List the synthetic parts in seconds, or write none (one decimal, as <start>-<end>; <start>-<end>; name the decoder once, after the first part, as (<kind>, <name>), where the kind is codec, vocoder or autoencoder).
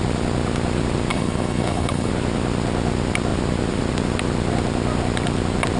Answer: 1.1-2.1 (codec, HILCodec)